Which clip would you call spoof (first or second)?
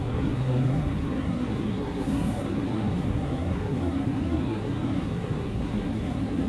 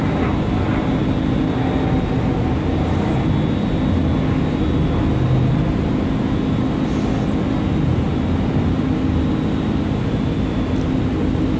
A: first